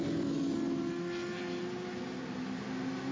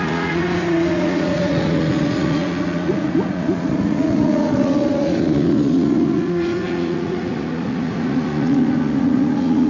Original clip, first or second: first